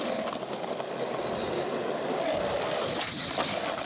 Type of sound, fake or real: real